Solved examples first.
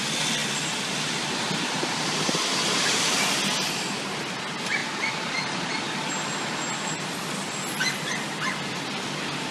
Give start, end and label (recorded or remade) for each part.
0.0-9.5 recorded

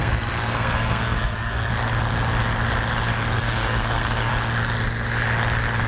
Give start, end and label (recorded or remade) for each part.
0.0-1.7 remade; 1.7-3.3 recorded; 3.3-4.3 remade; 4.3-5.9 recorded

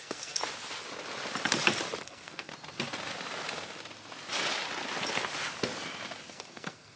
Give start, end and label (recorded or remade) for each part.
0.0-0.4 remade; 0.4-2.0 recorded; 2.0-2.5 remade; 2.5-6.3 recorded; 6.3-7.0 remade

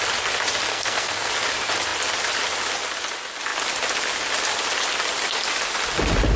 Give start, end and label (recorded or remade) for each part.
0.0-0.7 recorded; 0.7-1.3 remade; 1.3-6.4 recorded